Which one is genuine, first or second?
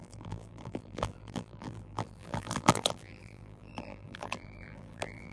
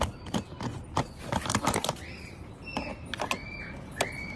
second